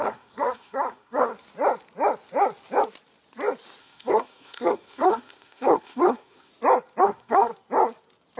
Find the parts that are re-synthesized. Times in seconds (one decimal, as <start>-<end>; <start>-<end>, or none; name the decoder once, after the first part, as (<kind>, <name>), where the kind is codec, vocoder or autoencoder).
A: 0.0-1.3 (codec, SNAC); 3.8-6.5; 7.0-7.5